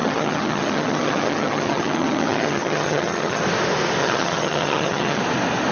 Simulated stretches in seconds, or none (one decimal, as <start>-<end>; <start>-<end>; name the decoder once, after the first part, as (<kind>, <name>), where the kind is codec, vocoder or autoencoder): 0.0-3.4 (vocoder, HiFi-GAN); 4.0-5.2